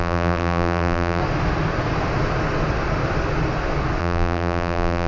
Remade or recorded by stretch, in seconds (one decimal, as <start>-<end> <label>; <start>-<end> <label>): 0.0-1.2 remade; 1.2-4.0 recorded; 4.0-5.1 remade